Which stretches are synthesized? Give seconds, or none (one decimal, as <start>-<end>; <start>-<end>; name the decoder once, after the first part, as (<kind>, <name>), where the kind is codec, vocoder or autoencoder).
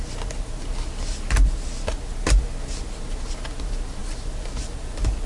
none